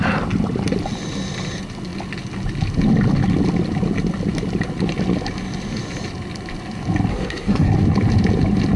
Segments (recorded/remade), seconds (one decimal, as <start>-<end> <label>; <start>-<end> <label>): 0.0-7.1 recorded; 7.1-7.7 remade; 7.7-8.8 recorded